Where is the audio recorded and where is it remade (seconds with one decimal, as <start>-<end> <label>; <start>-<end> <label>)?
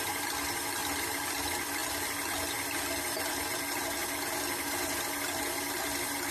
0.0-0.8 recorded; 0.8-1.4 remade; 1.4-4.0 recorded; 4.0-6.3 remade